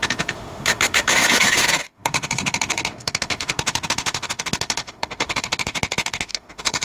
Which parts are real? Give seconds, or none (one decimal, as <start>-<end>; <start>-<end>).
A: none